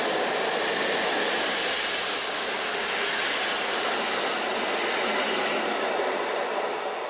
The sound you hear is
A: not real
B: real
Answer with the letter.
B